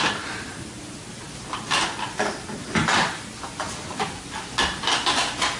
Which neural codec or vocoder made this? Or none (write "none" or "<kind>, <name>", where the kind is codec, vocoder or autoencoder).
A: none